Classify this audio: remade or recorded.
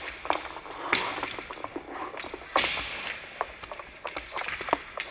recorded